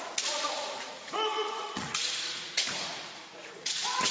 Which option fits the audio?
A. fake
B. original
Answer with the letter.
A